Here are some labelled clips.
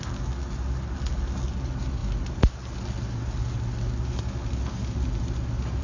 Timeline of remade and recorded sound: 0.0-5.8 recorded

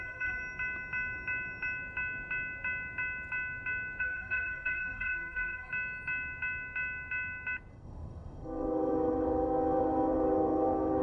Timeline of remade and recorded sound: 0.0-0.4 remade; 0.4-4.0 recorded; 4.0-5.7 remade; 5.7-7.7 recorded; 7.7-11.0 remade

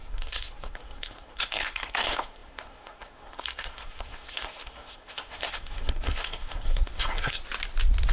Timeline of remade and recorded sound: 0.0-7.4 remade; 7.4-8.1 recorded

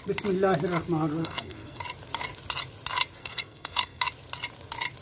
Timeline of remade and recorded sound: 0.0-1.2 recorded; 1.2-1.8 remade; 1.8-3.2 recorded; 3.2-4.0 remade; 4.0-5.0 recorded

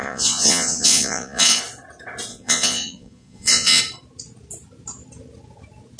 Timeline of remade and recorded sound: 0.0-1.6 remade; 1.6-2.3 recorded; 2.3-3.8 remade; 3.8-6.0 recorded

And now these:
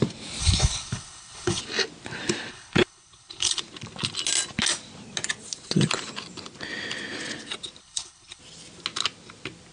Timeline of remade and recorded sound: 0.0-0.4 recorded; 0.4-1.6 remade; 1.6-2.5 recorded; 2.5-3.6 remade; 3.6-7.8 recorded; 7.8-8.4 remade; 8.4-9.7 recorded